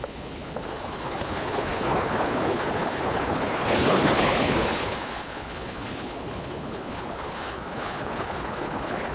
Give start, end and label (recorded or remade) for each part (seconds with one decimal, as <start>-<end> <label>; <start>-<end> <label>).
0.0-9.1 remade